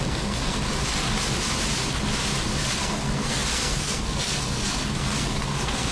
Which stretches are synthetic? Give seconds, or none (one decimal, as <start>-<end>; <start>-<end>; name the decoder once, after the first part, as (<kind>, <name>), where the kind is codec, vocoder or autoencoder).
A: 0.0-0.6 (codec, SNAC); 2.8-5.9